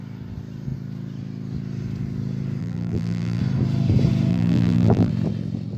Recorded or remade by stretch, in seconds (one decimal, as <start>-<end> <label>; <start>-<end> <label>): 0.0-2.6 recorded; 2.6-3.4 remade; 3.4-4.3 recorded; 4.3-5.1 remade; 5.1-5.8 recorded